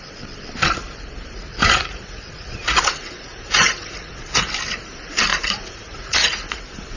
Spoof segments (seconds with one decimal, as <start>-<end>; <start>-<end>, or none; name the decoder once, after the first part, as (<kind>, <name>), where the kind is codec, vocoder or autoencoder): 1.5-4.5 (vocoder, Vocos); 5.3-6.6